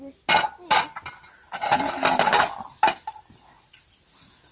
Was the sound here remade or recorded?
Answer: recorded